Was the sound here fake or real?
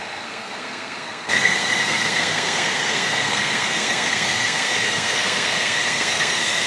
fake